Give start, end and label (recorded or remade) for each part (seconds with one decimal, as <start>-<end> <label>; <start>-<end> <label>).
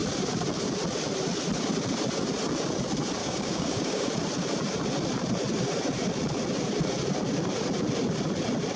0.0-3.2 recorded; 3.2-4.1 remade; 4.1-8.8 recorded